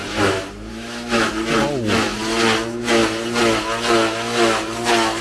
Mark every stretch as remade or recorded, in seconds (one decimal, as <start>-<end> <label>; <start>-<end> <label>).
0.0-0.7 recorded; 0.7-1.3 remade; 1.3-5.2 recorded

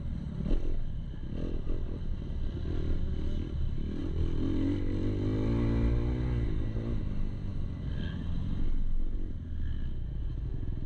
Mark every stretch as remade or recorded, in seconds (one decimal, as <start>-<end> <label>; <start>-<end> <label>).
0.0-10.9 recorded

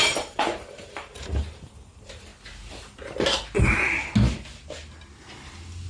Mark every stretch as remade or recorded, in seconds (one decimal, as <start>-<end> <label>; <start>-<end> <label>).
0.0-2.3 remade; 2.3-5.9 recorded

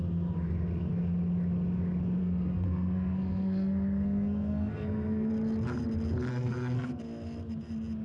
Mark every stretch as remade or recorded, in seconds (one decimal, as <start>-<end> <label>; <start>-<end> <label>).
0.0-2.2 recorded; 2.2-5.3 remade; 5.3-6.3 recorded; 6.3-7.0 remade; 7.0-8.0 recorded